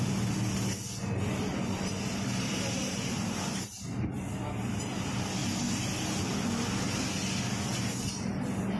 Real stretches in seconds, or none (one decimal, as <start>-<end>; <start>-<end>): 0.0-1.5; 4.1-8.8